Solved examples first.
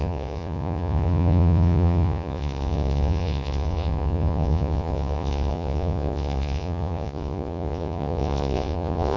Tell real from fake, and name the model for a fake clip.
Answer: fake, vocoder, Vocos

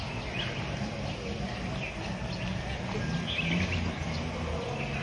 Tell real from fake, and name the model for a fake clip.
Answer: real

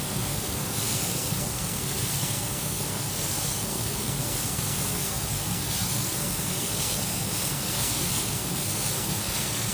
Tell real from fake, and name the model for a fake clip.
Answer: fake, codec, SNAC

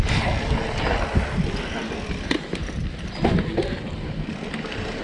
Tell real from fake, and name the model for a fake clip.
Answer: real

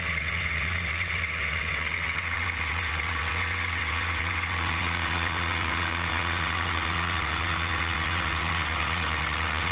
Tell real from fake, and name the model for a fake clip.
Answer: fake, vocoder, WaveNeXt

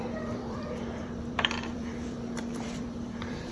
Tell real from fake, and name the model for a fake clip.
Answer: fake, vocoder, BigVGAN v2